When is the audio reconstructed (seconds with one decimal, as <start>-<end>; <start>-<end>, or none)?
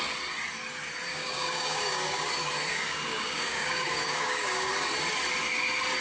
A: 1.1-2.3; 2.7-4.7